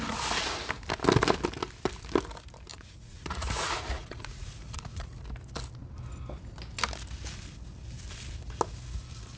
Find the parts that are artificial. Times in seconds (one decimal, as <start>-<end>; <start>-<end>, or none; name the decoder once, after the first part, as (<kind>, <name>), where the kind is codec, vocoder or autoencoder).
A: 2.7-5.2 (vocoder, Vocos)